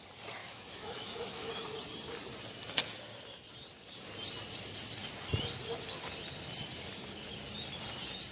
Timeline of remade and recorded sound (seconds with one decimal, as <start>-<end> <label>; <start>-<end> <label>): 0.0-0.4 recorded; 0.4-1.5 remade; 1.5-8.3 recorded